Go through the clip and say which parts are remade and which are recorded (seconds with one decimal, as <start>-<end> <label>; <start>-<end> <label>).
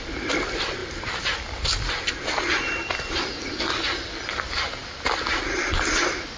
0.0-6.4 recorded